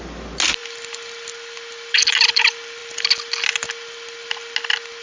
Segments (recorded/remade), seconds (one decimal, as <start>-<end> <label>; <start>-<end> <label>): 0.0-5.0 recorded